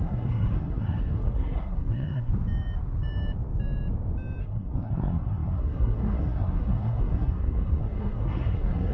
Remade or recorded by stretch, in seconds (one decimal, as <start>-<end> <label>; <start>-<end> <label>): 0.0-2.3 remade; 2.3-4.4 recorded; 4.4-8.9 remade

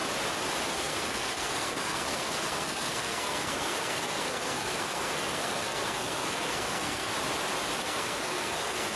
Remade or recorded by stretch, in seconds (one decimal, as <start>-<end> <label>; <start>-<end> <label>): 0.0-0.7 recorded; 0.7-7.1 remade; 7.1-7.8 recorded; 7.8-9.0 remade

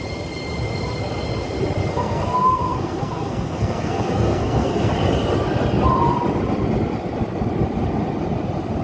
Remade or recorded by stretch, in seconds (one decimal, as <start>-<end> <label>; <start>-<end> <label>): 0.0-1.9 recorded; 1.9-4.9 remade; 4.9-8.8 recorded

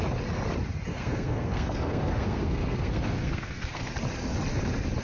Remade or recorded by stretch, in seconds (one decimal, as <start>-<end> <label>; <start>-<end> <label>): 0.0-0.9 recorded; 0.9-3.9 remade; 3.9-5.0 recorded

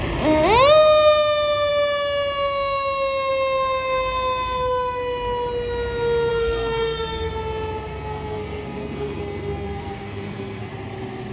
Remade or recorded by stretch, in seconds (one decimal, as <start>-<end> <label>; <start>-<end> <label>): 0.0-6.3 recorded; 6.3-7.3 remade; 7.3-7.9 recorded; 7.9-10.7 remade; 10.7-11.3 recorded